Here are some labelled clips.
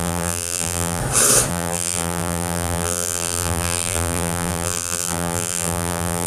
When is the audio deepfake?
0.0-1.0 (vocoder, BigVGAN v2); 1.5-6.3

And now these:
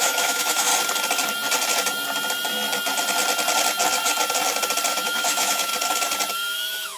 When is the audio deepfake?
0.0-0.7 (autoencoder, DAC-VAE); 4.9-5.7; 6.3-7.0

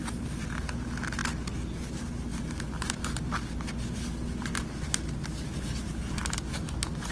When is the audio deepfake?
none

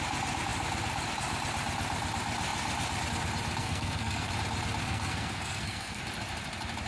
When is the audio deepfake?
3.6-4.3 (codec, SNAC); 4.8-6.0

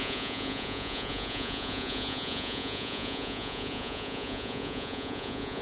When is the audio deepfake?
0.0-5.6 (vocoder, Vocos)